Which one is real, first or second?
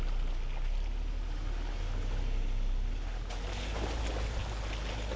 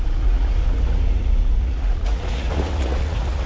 first